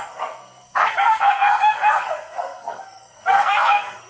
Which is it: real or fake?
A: fake